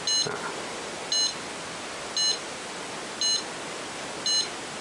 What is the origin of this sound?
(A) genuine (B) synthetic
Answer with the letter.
A